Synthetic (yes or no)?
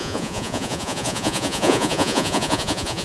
yes